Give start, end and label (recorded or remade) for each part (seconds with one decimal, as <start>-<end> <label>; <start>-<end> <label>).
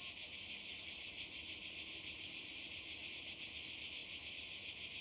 0.0-1.6 recorded; 1.6-3.1 remade; 3.1-5.0 recorded